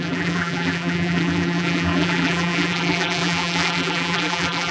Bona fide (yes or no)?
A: no